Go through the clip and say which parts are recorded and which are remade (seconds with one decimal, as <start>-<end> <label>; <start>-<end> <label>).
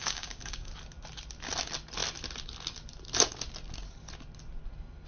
0.0-0.7 remade; 0.7-5.1 recorded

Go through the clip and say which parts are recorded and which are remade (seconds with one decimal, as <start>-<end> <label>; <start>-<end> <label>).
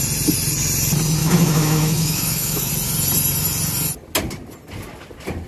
0.0-1.2 recorded; 1.2-2.7 remade; 2.7-5.5 recorded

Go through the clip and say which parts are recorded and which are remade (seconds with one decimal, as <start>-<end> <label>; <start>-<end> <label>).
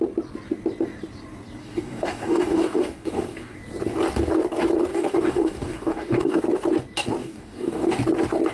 0.0-1.6 recorded; 1.6-3.6 remade; 3.6-4.9 recorded; 4.9-6.4 remade; 6.4-7.2 recorded; 7.2-8.0 remade; 8.0-8.5 recorded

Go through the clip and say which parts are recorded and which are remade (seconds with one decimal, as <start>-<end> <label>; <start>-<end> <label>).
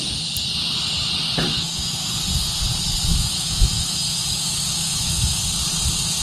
0.0-1.5 recorded; 1.5-2.1 remade; 2.1-3.1 recorded; 3.1-5.4 remade; 5.4-6.2 recorded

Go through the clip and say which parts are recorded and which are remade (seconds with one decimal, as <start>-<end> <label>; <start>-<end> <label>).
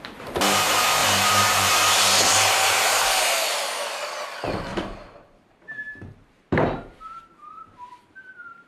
0.0-1.0 recorded; 1.0-1.9 remade; 1.9-4.7 recorded; 4.7-8.7 remade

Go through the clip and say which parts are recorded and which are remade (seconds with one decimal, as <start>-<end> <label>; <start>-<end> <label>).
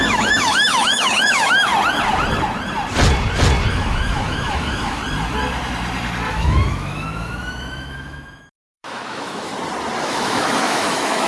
0.0-1.7 remade; 1.7-3.7 recorded; 3.7-5.0 remade; 5.0-6.3 recorded; 6.3-9.5 remade; 9.5-10.0 recorded; 10.0-11.3 remade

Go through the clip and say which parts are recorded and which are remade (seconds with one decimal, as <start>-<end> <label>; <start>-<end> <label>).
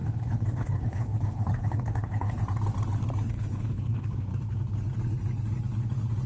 0.0-2.4 remade; 2.4-3.3 recorded; 3.3-4.3 remade; 4.3-6.3 recorded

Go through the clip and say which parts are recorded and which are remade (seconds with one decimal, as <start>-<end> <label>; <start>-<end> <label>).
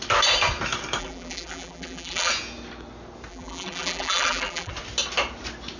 0.0-1.0 recorded; 1.0-2.3 remade; 2.3-3.3 recorded; 3.3-4.7 remade; 4.7-5.8 recorded